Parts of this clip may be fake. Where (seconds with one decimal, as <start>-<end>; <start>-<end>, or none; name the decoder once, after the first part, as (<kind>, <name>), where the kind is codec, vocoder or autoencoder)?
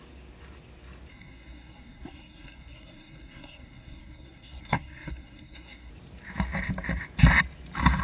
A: 1.1-5.9 (codec, SNAC)